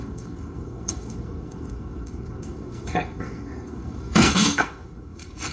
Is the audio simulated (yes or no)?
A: yes